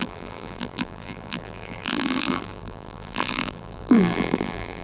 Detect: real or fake fake